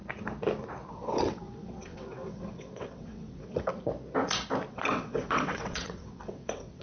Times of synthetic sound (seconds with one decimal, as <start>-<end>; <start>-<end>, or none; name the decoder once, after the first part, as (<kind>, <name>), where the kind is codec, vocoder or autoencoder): 0.9-3.7 (vocoder, WaveNeXt); 4.7-6.8